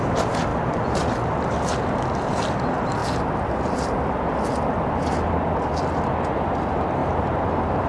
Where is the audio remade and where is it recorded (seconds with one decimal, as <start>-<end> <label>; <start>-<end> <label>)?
0.0-7.0 recorded; 7.0-7.9 remade